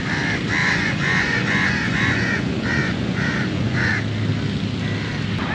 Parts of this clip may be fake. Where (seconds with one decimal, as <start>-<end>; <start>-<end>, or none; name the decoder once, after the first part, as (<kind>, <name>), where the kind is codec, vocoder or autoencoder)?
0.6-3.9 (vocoder, Vocos)